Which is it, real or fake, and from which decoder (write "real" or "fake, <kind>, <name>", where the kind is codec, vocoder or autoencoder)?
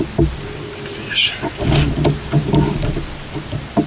real